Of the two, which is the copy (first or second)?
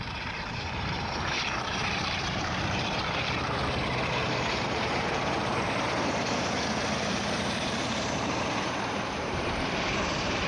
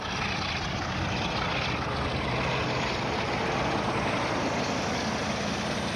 first